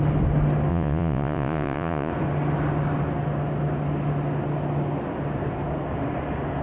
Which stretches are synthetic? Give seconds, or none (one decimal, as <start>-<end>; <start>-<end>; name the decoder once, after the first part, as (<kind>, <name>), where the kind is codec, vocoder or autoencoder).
0.7-2.1 (vocoder, Vocos)

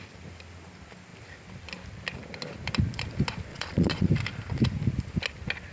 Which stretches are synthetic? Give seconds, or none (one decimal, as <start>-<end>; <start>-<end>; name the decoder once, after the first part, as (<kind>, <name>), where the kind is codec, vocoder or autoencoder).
3.5-4.1 (vocoder, Vocos)

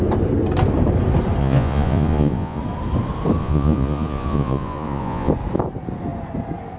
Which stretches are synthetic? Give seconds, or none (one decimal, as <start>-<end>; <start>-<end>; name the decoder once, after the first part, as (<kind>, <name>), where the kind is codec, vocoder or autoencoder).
1.4-2.6 (vocoder, Vocos); 3.4-5.3

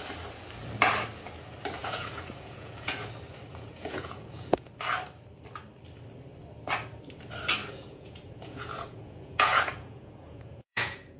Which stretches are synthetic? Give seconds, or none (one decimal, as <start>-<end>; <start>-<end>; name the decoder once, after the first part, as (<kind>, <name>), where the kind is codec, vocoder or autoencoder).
1.8-3.1 (vocoder, Vocos); 3.5-4.7; 7.6-11.2

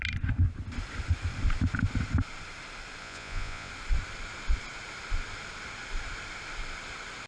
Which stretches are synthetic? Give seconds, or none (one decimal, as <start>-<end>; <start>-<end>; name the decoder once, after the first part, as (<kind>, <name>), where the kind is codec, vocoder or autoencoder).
3.0-3.7 (vocoder, Vocos)

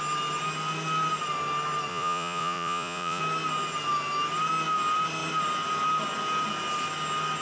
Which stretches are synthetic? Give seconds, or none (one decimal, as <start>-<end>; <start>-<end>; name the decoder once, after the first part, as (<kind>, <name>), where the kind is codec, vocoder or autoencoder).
1.9-3.2 (vocoder, Vocos)

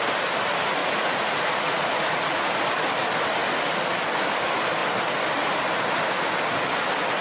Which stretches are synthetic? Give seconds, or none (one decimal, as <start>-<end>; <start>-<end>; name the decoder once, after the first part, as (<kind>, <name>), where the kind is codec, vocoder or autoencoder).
0.8-2.9 (vocoder, Vocos)